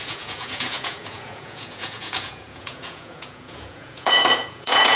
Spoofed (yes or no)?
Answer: yes